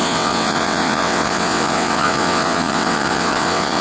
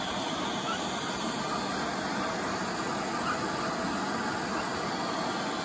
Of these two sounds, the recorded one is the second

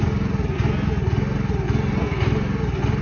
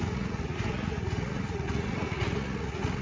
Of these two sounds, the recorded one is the first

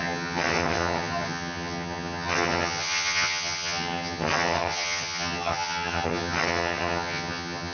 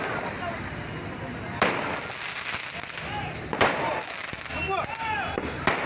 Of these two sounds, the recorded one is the second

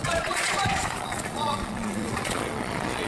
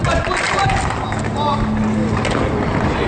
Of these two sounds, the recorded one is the second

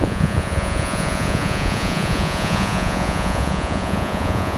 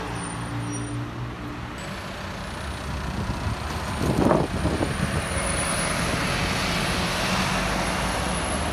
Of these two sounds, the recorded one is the second